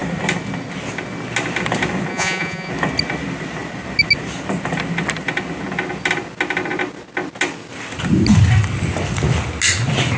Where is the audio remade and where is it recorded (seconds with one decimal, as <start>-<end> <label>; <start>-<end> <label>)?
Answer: 0.0-2.1 recorded; 2.1-2.7 remade; 2.7-10.2 recorded